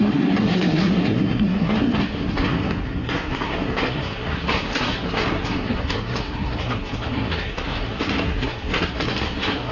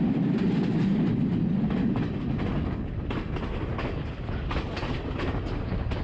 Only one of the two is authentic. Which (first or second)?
second